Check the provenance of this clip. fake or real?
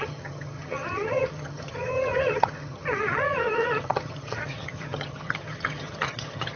fake